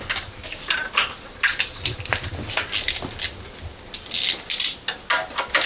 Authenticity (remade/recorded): recorded